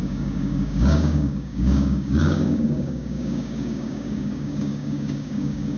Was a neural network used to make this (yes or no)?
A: yes